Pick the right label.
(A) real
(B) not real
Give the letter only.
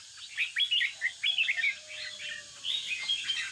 A